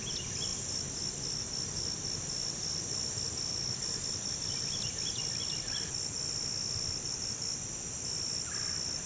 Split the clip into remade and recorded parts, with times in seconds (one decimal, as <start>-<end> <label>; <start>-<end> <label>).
0.0-9.1 recorded